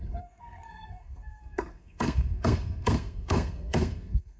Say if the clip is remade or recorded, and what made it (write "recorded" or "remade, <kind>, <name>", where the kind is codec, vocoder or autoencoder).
remade, codec, SNAC